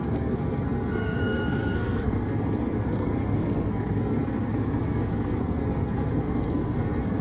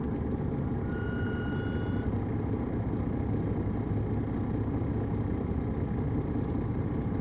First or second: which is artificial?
first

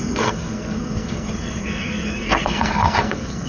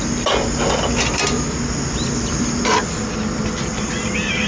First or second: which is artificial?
first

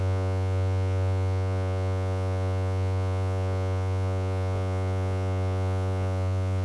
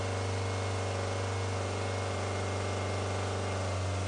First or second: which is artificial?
first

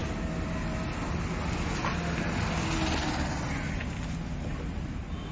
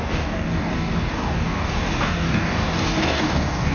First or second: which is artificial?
second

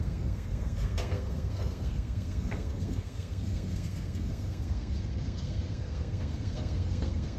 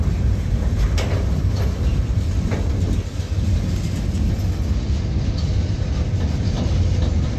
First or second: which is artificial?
first